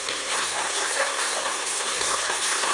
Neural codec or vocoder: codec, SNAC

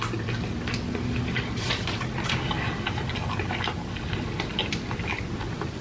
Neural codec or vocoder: none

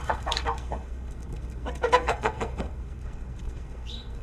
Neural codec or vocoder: codec, SNAC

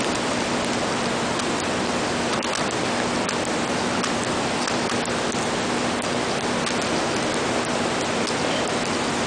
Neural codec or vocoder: none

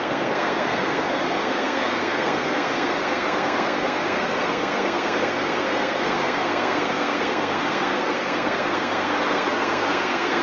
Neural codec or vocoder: codec, SNAC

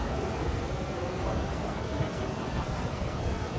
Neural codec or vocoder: codec, SNAC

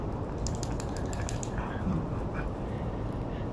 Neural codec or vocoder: none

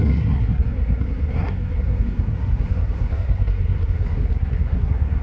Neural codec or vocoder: codec, SNAC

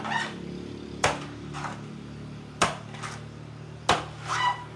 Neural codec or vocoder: none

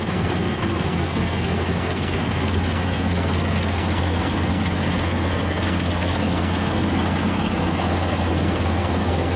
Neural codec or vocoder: codec, SNAC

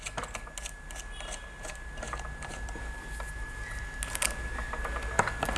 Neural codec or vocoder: none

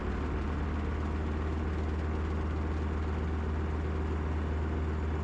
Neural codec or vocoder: none